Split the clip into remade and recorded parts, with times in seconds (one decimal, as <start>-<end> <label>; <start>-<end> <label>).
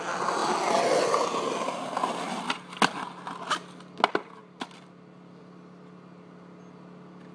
0.0-7.3 recorded